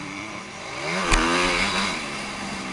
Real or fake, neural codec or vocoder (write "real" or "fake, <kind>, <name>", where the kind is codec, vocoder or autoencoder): real